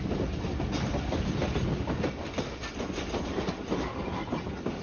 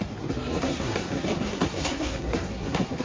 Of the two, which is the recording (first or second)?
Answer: first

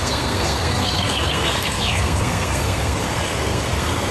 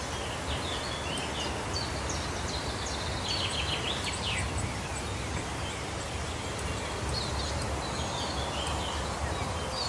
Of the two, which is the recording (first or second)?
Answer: second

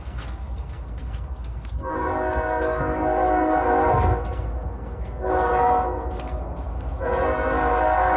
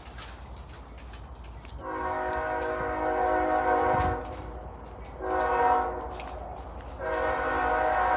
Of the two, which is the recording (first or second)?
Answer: second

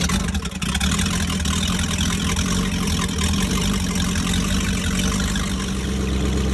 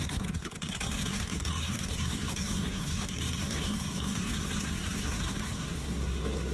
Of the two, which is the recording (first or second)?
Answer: first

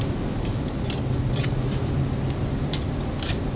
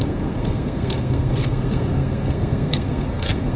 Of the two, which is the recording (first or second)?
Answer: first